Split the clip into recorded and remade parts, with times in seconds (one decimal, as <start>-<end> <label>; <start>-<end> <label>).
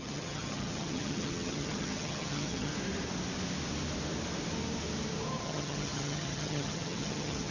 0.0-2.7 remade; 2.7-5.4 recorded; 5.4-7.5 remade